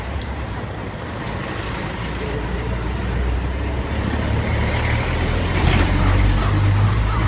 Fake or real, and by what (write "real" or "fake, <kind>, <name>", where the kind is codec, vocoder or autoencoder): fake, vocoder, BigVGAN v2